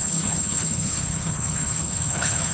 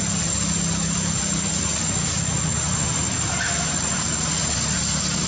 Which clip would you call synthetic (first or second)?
first